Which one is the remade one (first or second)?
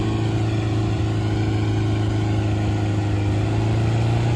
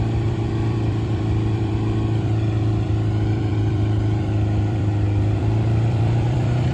second